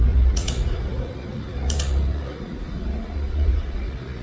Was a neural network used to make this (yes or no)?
yes